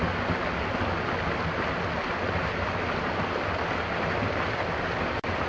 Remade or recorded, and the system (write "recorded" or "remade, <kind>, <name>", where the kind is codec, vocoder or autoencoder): recorded